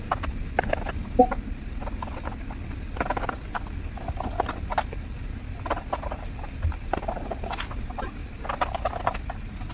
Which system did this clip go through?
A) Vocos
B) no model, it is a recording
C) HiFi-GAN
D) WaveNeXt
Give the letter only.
B